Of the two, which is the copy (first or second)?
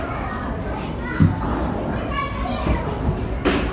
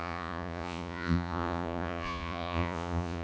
second